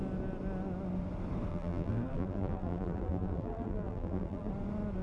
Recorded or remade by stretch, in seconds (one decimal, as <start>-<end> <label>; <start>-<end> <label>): 0.0-1.5 recorded; 1.5-4.5 remade; 4.5-5.0 recorded